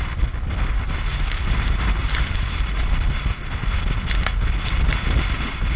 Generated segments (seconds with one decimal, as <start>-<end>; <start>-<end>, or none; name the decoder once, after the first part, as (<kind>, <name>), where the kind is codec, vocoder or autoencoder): 1.1-2.9 (vocoder, BigVGAN v2)